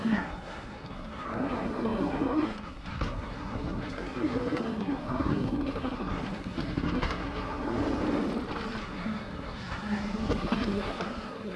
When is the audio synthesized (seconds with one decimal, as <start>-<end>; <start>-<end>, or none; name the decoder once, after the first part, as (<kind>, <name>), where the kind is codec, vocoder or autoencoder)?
0.0-7.8 (codec, SNAC); 8.8-11.6